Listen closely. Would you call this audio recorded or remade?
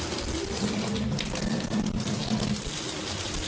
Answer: recorded